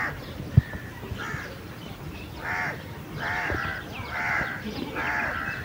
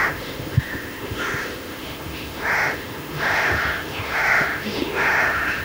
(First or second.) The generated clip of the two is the second